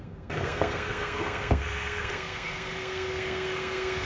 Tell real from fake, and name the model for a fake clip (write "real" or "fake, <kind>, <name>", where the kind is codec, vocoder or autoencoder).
fake, codec, SNAC